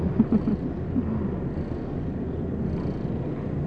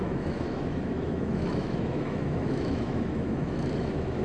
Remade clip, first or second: second